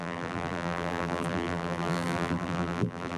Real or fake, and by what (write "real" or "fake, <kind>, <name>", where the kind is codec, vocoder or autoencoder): fake, vocoder, BigVGAN v2